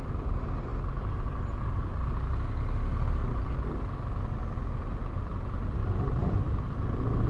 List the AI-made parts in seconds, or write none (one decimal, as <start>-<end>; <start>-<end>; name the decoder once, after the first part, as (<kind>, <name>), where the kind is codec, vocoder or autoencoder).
none